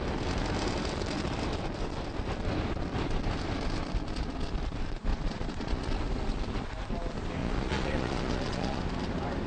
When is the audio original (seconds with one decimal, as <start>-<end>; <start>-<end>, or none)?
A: 0.0-5.1; 5.8-7.4; 8.8-9.5